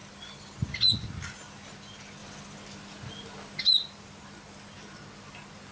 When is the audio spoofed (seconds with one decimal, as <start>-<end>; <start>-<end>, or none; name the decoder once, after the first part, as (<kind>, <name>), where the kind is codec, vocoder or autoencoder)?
none